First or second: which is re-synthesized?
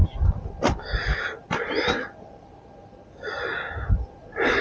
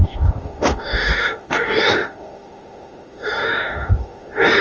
second